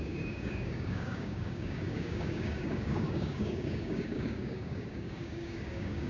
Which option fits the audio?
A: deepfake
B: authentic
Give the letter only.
A